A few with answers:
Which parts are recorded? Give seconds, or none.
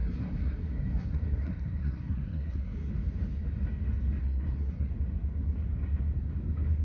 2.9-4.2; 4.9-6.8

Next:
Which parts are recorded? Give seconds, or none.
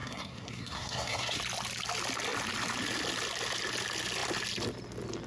1.4-5.3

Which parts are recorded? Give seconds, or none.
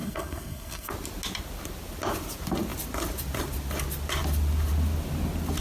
0.9-5.6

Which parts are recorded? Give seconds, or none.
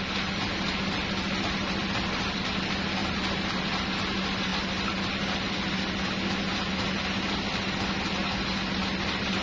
0.0-9.4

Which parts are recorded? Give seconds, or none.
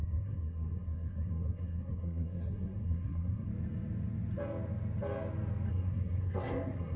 3.5-5.7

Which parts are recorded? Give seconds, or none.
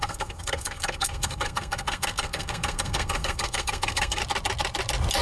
4.2-5.2